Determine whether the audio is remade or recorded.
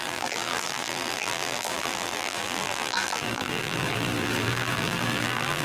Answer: remade